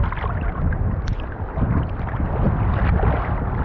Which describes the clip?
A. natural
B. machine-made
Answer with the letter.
A